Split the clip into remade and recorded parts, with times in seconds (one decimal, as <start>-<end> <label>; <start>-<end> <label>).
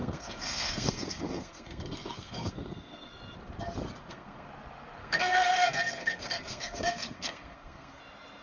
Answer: 0.0-3.1 remade; 3.1-4.0 recorded; 4.0-4.5 remade; 4.5-5.0 recorded; 5.0-8.0 remade; 8.0-8.4 recorded